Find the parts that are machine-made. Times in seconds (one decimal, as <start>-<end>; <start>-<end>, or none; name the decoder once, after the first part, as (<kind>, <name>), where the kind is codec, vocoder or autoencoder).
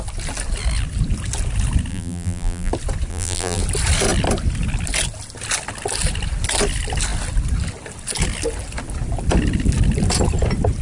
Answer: 1.9-2.7 (vocoder, BigVGAN v2); 3.1-3.6